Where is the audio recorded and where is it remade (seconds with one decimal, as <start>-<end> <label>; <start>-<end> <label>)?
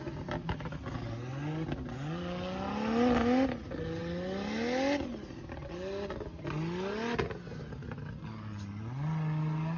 0.0-9.8 recorded